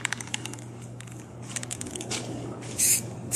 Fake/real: fake